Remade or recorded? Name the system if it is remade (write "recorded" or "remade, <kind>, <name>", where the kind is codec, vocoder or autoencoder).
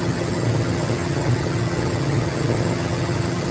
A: remade, vocoder, HiFi-GAN